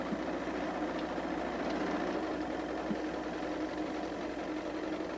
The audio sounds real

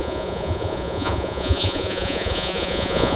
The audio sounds fake